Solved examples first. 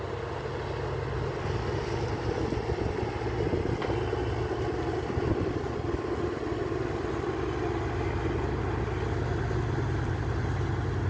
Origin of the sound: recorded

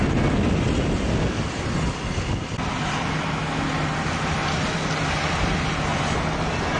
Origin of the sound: recorded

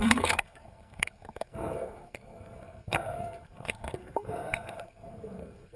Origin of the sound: remade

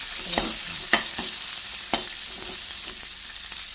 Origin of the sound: recorded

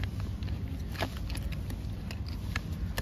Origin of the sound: recorded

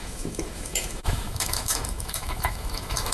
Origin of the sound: remade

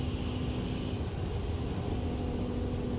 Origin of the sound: recorded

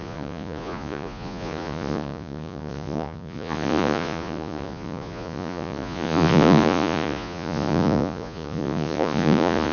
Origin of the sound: remade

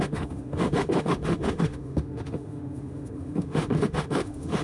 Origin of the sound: remade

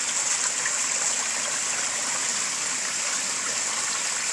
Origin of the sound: recorded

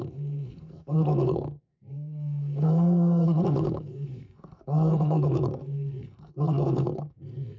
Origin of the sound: remade